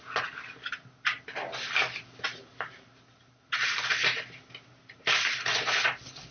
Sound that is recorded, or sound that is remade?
recorded